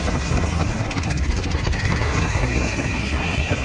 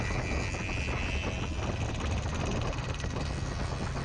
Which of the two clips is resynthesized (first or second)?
first